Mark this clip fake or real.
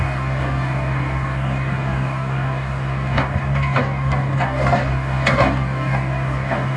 fake